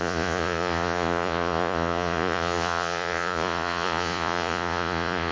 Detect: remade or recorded remade